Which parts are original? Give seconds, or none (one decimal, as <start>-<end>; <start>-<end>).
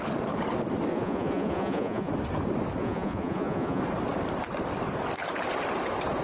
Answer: 0.0-0.9; 2.1-2.8; 3.8-6.2